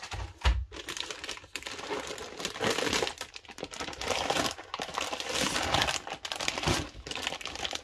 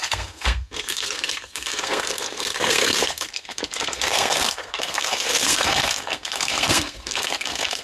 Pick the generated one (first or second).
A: second